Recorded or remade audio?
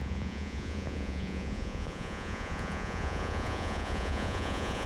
remade